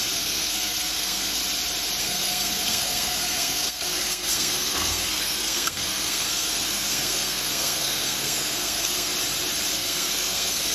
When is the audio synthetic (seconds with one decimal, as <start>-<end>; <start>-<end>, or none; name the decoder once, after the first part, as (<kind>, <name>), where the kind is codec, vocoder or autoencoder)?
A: 0.0-1.4 (codec, SNAC); 2.0-9.1; 9.7-10.7